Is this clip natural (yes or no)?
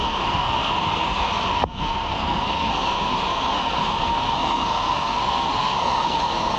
no